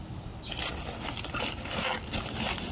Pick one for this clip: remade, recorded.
recorded